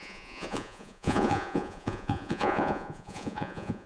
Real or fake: fake